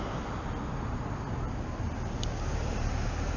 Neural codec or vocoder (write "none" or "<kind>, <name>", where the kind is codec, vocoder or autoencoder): none